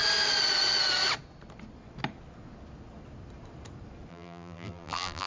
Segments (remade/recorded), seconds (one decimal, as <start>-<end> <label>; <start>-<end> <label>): 0.0-4.1 recorded; 4.1-5.3 remade